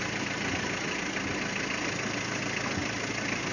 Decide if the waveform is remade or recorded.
recorded